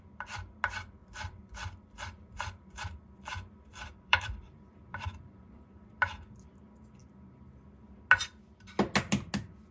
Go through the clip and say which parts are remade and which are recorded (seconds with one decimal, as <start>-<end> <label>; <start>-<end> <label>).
0.0-1.0 recorded; 1.0-3.0 remade; 3.0-3.7 recorded; 3.7-5.9 remade; 5.9-9.7 recorded